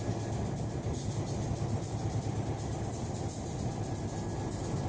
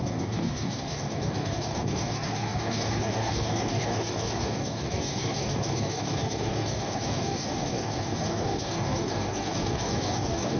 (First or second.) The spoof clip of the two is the second